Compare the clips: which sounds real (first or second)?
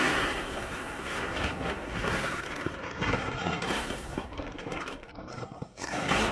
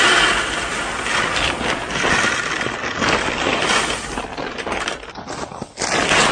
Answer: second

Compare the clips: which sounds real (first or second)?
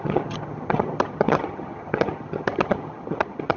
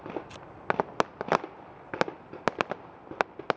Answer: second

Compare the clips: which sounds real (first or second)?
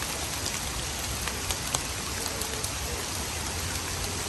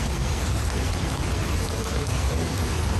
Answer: first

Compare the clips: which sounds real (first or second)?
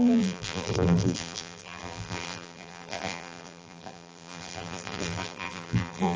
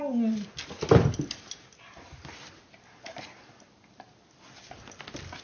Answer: second